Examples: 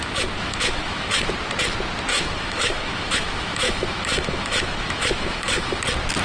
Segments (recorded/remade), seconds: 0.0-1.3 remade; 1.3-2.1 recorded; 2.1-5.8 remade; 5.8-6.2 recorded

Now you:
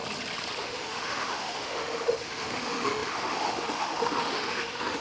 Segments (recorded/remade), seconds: 0.0-0.6 recorded; 0.6-5.0 remade

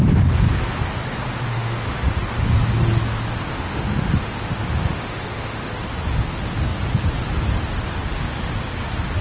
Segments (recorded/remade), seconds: 0.0-1.5 recorded; 1.5-2.0 remade; 2.0-3.5 recorded; 3.5-5.7 remade; 5.7-9.2 recorded

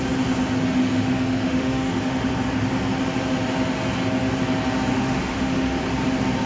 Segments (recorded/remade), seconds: 0.0-0.8 recorded; 0.8-2.3 remade; 2.3-4.9 recorded; 4.9-5.8 remade; 5.8-6.5 recorded